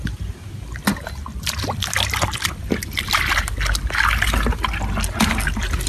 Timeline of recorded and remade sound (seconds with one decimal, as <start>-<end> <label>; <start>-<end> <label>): 0.0-5.9 recorded